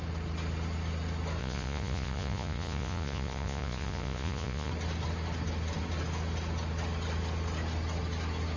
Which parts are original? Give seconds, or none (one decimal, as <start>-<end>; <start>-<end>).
0.0-1.4; 4.7-8.6